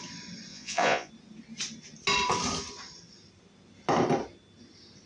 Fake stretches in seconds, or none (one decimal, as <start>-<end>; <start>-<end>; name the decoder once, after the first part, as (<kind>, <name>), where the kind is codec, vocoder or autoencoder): 0.5-1.1 (vocoder, Vocos)